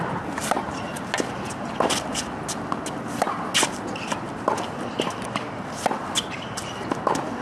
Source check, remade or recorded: recorded